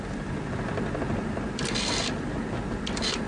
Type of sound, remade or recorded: recorded